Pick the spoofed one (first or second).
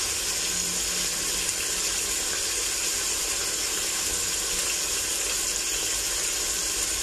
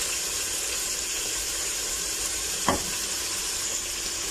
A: second